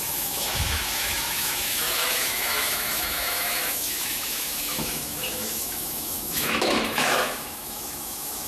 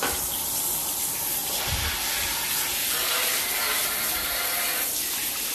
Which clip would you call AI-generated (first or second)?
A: first